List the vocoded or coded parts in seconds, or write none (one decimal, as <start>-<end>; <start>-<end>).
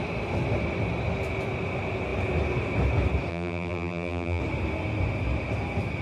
3.3-4.4